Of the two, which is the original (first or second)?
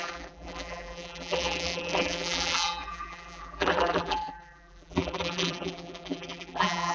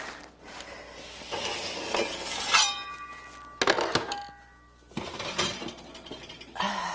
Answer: second